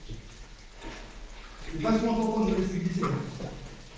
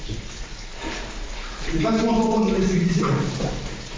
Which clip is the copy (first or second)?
second